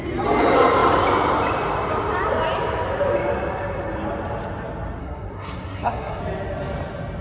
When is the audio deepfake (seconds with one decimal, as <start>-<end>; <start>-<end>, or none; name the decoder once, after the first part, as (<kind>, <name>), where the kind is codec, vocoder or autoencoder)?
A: 5.0-6.2 (codec, SNAC)